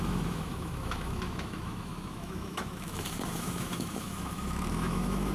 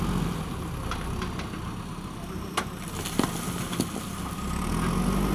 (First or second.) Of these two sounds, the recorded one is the second